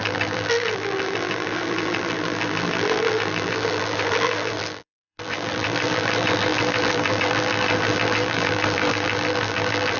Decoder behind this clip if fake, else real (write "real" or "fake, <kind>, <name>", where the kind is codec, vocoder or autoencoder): fake, vocoder, BigVGAN v2